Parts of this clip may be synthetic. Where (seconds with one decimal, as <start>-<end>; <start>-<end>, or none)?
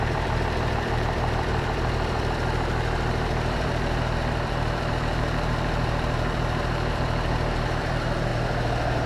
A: 0.0-8.3